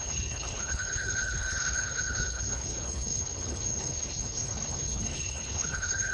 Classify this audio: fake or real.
fake